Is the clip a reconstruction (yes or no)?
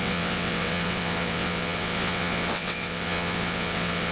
yes